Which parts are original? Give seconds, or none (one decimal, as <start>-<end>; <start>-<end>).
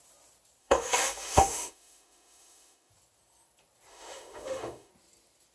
0.0-0.6; 2.9-3.9; 4.9-5.5